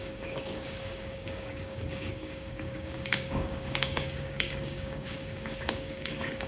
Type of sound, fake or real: fake